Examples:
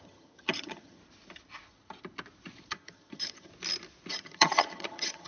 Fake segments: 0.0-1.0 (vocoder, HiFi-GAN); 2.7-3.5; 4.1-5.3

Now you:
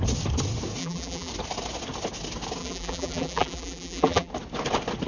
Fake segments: 0.8-1.3 (vocoder, BigVGAN v2); 2.6-4.3

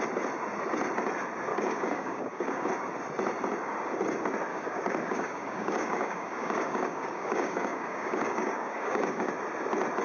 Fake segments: 1.5-2.7 (codec, DAC); 4.5-9.3

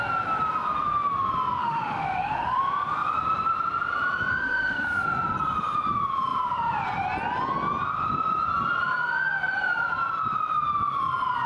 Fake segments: 1.6-2.6 (autoencoder, DAC-VAE); 4.4-5.0